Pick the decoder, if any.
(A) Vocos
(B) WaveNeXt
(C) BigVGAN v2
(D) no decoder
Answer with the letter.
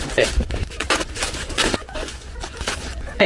A